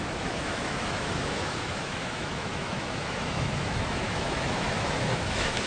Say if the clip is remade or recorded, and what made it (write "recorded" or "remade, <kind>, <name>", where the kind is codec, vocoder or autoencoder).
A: remade, autoencoder, DAC-VAE